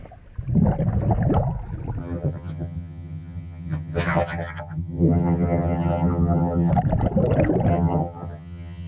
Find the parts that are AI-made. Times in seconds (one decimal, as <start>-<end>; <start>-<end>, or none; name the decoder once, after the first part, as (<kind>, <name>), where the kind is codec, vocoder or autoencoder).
2.0-6.7 (vocoder, HiFi-GAN); 7.7-8.9